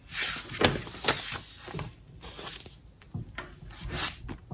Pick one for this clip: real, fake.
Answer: real